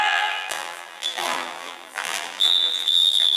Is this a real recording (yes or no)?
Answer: no